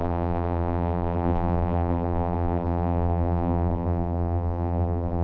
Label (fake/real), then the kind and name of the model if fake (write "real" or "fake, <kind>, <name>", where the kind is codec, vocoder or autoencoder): fake, vocoder, BigVGAN v2